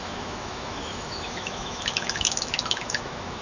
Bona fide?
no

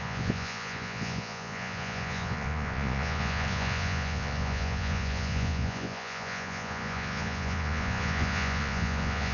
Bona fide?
no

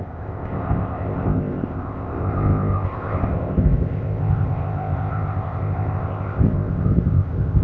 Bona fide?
no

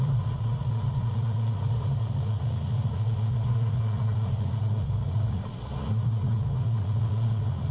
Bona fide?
no